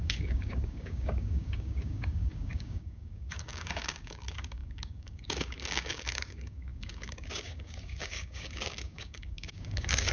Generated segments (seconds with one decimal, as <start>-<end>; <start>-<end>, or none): 0.0-10.1